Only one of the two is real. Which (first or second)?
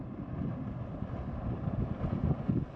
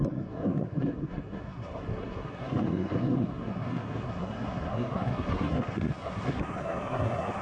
first